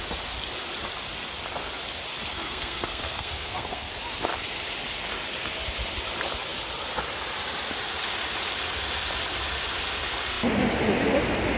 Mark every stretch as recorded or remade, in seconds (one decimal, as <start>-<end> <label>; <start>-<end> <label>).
0.0-2.3 recorded; 2.3-3.9 remade; 3.9-11.6 recorded